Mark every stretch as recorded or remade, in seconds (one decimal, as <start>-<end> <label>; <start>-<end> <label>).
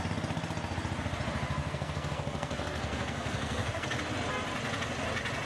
0.0-1.6 recorded; 1.6-4.0 remade; 4.0-5.5 recorded